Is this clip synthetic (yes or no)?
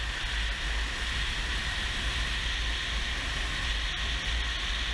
no